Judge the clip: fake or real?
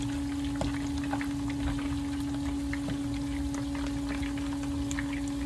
real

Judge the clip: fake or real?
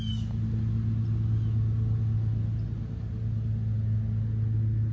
real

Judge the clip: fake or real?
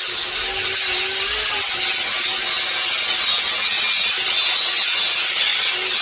real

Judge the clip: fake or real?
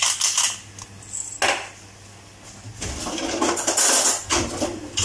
real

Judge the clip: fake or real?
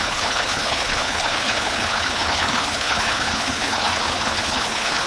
fake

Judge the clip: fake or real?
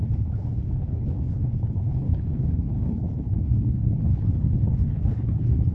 fake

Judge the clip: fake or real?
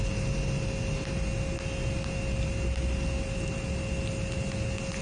real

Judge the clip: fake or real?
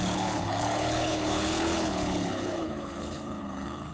fake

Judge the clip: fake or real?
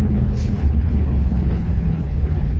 fake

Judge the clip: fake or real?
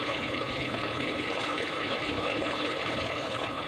fake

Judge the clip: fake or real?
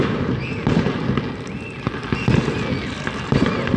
real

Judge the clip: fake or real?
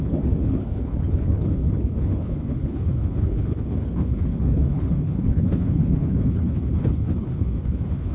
fake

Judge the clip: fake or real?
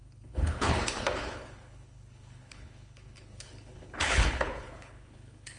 fake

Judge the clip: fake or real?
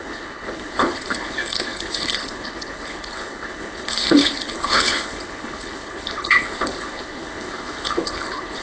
fake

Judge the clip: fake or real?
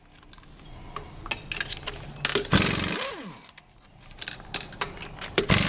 real